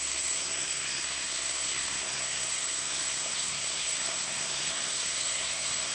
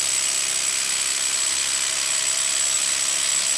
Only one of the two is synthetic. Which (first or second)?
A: first